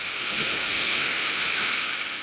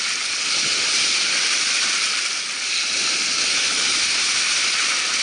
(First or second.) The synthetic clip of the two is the first